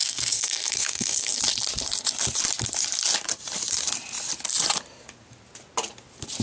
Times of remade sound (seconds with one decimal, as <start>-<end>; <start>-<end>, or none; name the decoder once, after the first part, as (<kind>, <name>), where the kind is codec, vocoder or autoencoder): 0.0-1.4 (codec, SNAC)